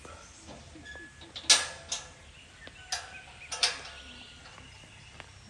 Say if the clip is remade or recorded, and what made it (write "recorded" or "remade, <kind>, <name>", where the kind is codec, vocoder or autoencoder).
recorded